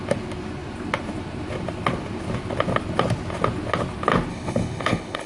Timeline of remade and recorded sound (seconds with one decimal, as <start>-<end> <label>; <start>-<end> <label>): 0.0-4.3 recorded; 4.3-5.3 remade